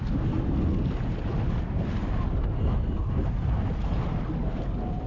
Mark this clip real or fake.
real